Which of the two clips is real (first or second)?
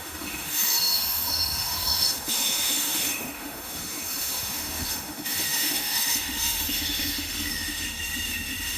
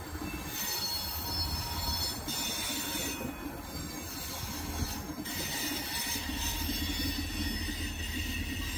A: second